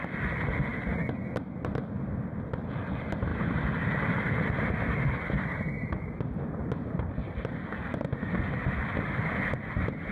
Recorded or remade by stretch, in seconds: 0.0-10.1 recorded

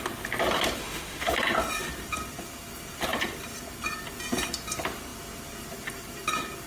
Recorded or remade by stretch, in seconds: 0.0-0.8 recorded; 0.8-1.3 remade; 1.3-6.7 recorded

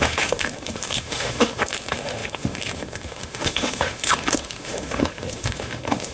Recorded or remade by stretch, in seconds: 0.0-6.1 remade

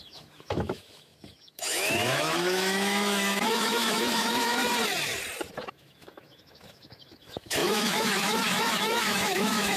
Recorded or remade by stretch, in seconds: 0.0-4.6 remade; 4.6-5.7 recorded; 5.7-9.8 remade

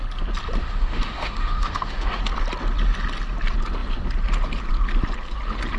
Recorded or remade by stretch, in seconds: 0.0-0.6 recorded; 0.6-2.2 remade; 2.2-5.8 recorded

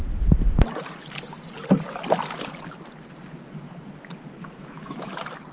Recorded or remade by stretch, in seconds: 0.0-4.4 recorded; 4.4-5.1 remade; 5.1-5.5 recorded

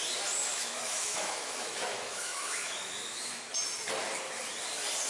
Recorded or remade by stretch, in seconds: 0.0-0.5 recorded; 0.5-3.4 remade; 3.4-5.1 recorded